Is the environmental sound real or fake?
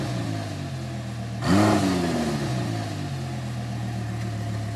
real